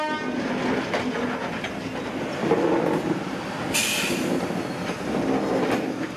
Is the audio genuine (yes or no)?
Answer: yes